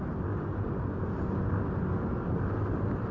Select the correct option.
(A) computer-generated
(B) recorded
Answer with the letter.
B